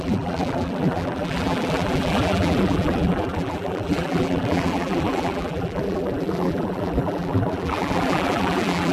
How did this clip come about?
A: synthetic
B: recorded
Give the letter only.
A